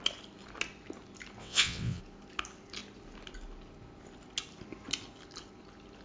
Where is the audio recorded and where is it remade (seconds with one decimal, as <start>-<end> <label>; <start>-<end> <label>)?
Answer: 0.0-1.4 recorded; 1.4-2.0 remade; 2.0-6.0 recorded